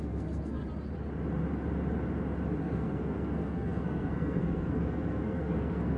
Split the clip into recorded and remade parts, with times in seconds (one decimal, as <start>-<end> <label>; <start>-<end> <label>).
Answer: 0.0-0.6 remade; 0.6-2.6 recorded; 2.6-6.0 remade